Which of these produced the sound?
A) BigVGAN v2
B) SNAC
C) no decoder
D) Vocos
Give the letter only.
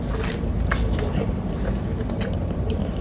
C